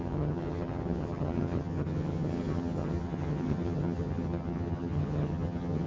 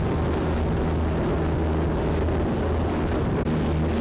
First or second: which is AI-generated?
first